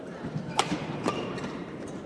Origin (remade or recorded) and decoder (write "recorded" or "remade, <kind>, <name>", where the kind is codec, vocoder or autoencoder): remade, vocoder, BigVGAN v2